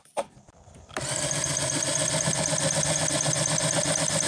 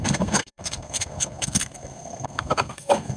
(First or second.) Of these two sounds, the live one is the first